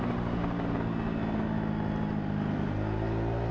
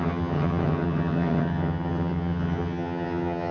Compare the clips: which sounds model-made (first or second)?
second